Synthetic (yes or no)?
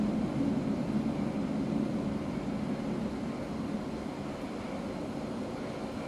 no